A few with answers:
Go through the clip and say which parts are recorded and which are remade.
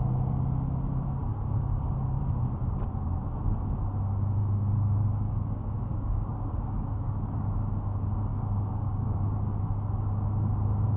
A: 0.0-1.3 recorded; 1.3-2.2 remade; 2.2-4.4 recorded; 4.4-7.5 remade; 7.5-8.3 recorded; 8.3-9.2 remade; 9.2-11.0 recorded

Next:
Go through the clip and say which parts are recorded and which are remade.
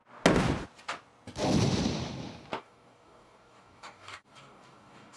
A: 0.0-2.6 recorded; 2.6-5.2 remade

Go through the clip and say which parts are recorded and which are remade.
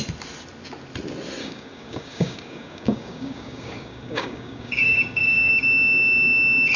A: 0.0-1.4 recorded; 1.4-5.5 remade; 5.5-6.8 recorded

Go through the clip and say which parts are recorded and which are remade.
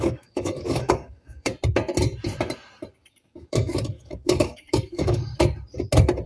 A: 0.0-1.5 remade; 1.5-3.1 recorded; 3.1-5.3 remade; 5.3-6.3 recorded